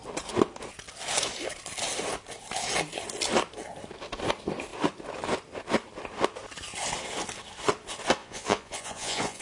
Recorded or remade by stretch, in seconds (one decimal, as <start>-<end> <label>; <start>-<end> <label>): 0.0-8.2 recorded; 8.2-9.4 remade